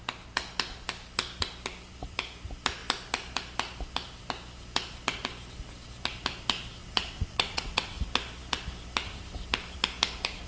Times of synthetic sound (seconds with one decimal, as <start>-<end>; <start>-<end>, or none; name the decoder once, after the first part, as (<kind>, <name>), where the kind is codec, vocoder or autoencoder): 6.8-8.0 (vocoder, WaveNeXt)